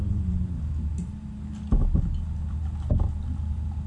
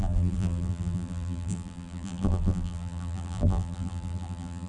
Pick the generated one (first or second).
second